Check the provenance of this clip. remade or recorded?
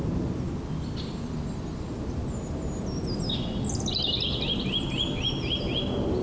recorded